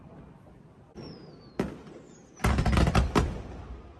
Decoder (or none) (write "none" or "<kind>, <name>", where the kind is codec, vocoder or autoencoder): none